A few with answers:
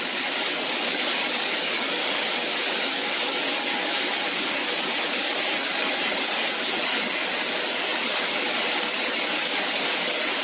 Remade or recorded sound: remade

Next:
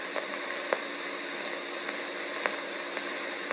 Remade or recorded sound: recorded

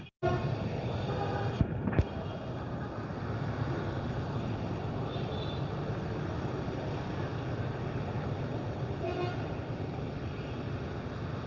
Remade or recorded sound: recorded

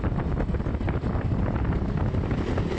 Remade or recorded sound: recorded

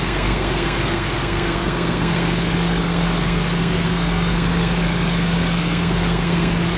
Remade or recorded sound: remade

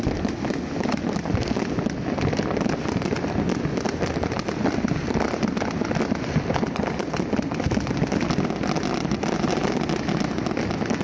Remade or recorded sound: recorded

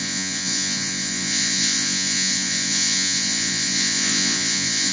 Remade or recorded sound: remade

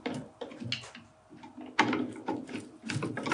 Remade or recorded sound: recorded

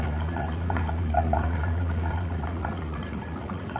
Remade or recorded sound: remade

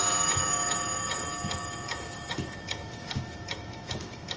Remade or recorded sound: remade